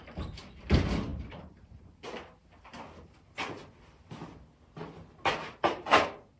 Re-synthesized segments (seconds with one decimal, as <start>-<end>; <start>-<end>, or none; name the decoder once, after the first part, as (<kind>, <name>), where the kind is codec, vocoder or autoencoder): none